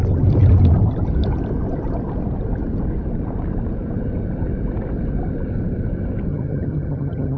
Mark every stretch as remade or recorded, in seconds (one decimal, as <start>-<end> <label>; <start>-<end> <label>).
0.0-6.3 recorded; 6.3-7.4 remade

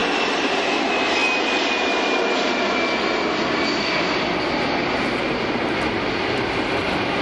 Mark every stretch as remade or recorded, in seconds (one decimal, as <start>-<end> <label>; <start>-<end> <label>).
0.0-7.2 recorded

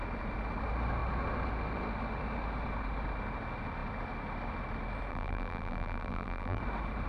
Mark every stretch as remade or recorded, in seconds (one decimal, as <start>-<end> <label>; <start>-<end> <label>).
0.0-5.1 recorded; 5.1-6.6 remade; 6.6-7.1 recorded

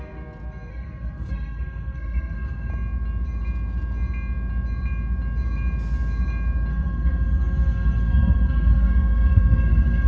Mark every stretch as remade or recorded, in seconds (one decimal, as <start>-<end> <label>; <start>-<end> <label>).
0.0-0.7 recorded; 0.7-2.7 remade; 2.7-6.7 recorded; 6.7-10.1 remade

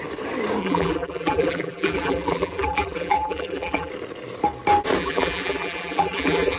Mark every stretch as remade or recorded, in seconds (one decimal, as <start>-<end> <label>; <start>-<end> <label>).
0.0-0.6 recorded; 0.6-3.9 remade; 3.9-5.0 recorded; 5.0-6.6 remade